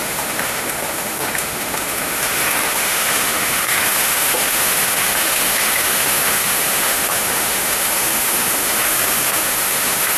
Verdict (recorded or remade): remade